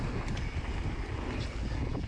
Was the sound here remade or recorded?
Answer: recorded